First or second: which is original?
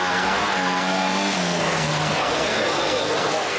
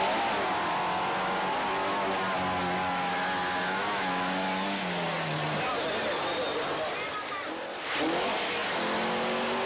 second